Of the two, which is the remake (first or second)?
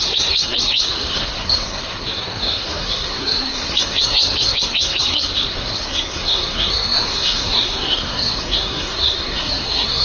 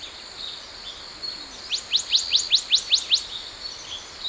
first